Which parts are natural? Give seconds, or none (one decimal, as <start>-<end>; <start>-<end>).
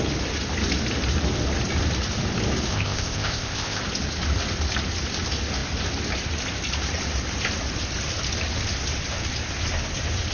0.0-2.7; 3.8-10.3